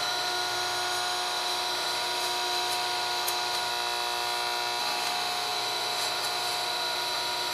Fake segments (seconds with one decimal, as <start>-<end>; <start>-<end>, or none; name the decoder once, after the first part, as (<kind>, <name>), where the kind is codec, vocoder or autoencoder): 0.0-3.7 (autoencoder, DAC-VAE); 4.8-7.5